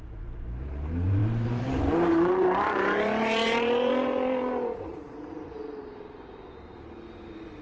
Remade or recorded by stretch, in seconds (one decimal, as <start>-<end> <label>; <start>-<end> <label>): 0.0-7.6 remade